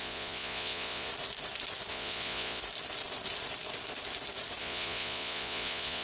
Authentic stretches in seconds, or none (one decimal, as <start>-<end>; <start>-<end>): 1.1-1.9; 2.6-4.6